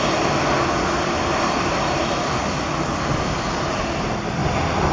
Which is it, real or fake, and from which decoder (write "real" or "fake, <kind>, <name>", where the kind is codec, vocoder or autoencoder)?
fake, vocoder, BigVGAN v2